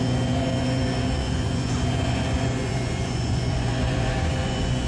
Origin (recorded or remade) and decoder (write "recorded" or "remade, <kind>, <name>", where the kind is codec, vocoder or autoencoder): remade, vocoder, Vocos